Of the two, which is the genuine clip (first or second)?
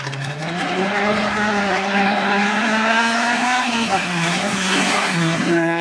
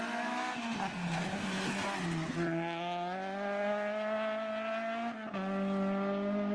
second